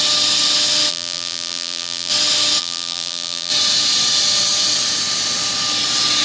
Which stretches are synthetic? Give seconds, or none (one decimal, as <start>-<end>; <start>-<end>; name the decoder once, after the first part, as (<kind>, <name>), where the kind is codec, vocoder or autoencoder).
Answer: 0.9-2.1 (vocoder, BigVGAN v2); 2.6-3.5